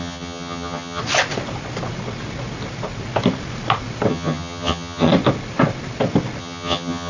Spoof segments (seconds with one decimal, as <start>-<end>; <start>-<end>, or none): 0.0-1.0; 4.1-5.1; 6.4-7.1